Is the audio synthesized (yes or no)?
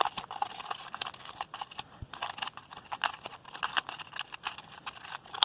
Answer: no